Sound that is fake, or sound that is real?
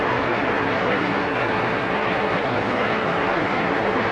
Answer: fake